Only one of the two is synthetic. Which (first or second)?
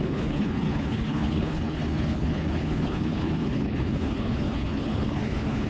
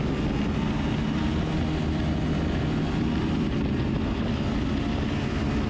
first